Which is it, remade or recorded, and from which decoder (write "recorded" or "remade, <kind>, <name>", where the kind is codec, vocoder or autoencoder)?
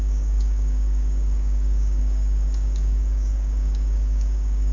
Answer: remade, codec, DAC